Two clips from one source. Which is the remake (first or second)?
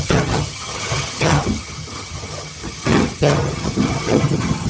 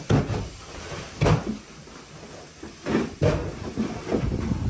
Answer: first